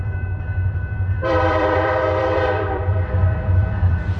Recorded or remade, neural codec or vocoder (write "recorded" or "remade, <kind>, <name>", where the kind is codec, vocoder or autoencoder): remade, vocoder, BigVGAN v2